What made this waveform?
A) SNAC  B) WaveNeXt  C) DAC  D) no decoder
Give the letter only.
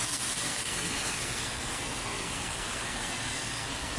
A